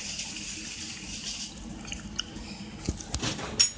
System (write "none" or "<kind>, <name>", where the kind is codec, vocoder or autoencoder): none